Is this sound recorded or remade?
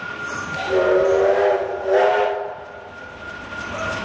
recorded